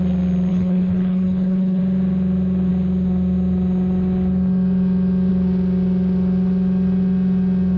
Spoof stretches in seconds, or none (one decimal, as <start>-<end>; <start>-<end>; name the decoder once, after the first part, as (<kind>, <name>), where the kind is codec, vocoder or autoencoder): 0.5-1.8 (codec, HILCodec)